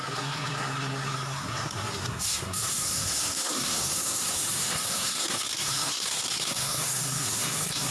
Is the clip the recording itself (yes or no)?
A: no